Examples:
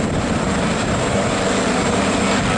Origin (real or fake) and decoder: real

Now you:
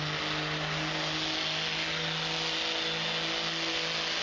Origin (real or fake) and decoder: real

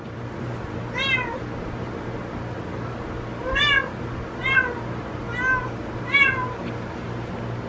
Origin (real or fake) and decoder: real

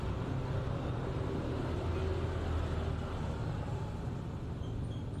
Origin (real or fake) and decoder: real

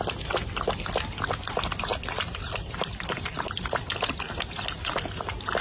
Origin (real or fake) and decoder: real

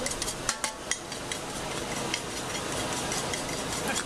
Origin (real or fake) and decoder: real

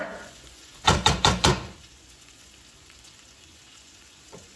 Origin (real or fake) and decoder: fake, vocoder, Vocos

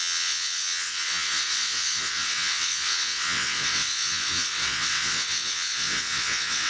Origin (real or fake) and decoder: fake, vocoder, WaveNeXt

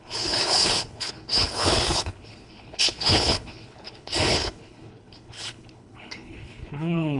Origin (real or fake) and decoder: fake, codec, HILCodec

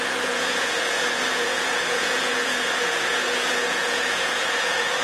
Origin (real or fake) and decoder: fake, vocoder, Vocos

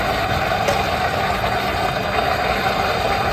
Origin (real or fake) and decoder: real